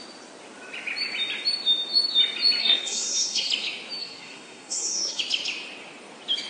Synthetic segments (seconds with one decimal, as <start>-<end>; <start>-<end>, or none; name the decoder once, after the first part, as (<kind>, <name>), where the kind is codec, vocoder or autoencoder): 2.6-3.5 (codec, SNAC); 4.0-5.2